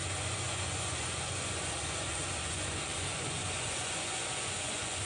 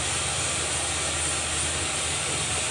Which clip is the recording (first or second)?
second